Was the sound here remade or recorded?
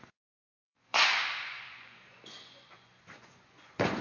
remade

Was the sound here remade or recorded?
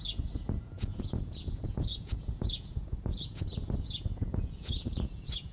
remade